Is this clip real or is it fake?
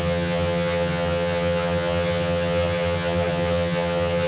fake